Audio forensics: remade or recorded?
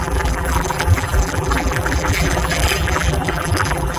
remade